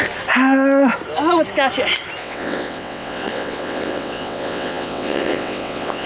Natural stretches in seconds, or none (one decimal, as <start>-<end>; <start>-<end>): 0.0-2.2